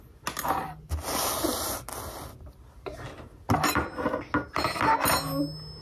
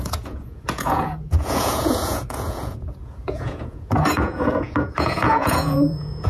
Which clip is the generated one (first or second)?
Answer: second